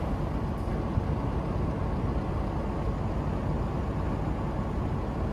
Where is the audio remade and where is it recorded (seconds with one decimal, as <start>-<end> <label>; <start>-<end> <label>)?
0.0-5.3 recorded